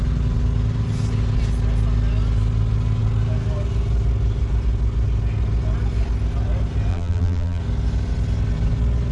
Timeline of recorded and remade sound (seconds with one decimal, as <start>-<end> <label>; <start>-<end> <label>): 0.0-6.9 recorded; 6.9-7.6 remade; 7.6-9.1 recorded